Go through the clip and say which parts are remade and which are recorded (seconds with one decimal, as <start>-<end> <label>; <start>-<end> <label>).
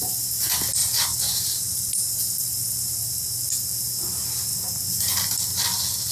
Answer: 0.0-0.8 recorded; 0.8-3.1 remade; 3.1-6.1 recorded